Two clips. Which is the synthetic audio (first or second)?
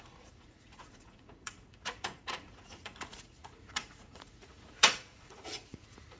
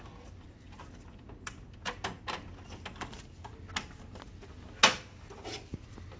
first